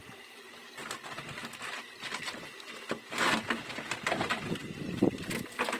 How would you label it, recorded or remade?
remade